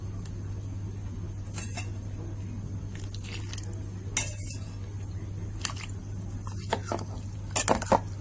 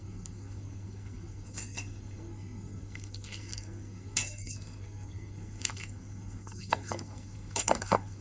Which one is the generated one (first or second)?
second